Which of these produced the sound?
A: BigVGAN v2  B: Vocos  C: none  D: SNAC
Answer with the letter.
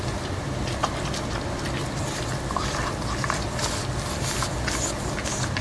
C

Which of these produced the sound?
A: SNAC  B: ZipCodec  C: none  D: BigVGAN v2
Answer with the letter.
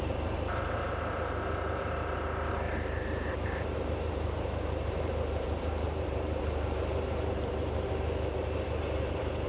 D